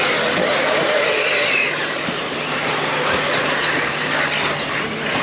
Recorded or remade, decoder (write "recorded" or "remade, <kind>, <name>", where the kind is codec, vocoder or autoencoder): recorded